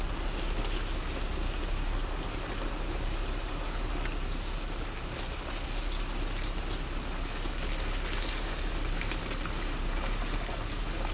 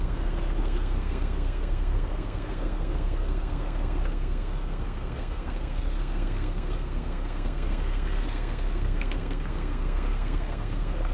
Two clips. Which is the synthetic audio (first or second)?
second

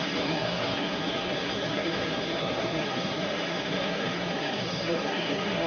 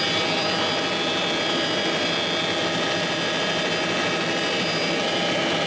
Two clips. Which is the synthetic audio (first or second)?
first